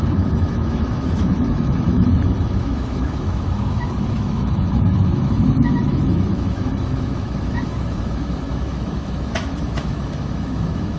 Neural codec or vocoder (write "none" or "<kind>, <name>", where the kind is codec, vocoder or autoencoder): autoencoder, DAC-VAE